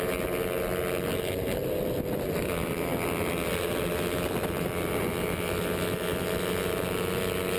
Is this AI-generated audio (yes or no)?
no